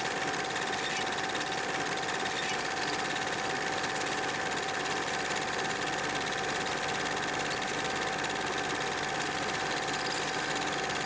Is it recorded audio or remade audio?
recorded